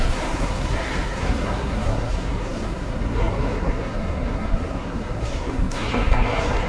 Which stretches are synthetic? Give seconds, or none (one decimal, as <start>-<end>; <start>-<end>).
0.0-6.7